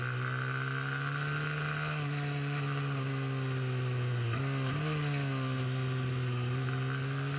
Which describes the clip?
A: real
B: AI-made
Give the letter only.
A